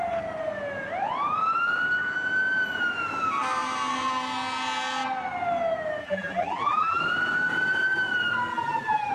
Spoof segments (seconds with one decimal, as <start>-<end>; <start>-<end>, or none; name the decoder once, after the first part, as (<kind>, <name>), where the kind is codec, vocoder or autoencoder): 6.0-7.0 (vocoder, BigVGAN v2); 8.5-9.1